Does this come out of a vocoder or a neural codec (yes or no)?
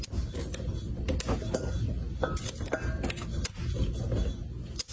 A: no